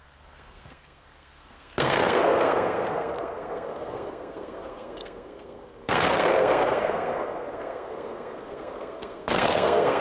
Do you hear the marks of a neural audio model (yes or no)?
yes